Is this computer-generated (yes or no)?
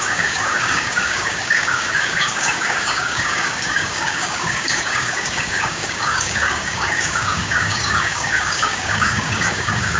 yes